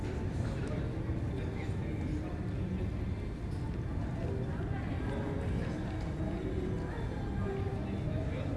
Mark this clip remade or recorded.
recorded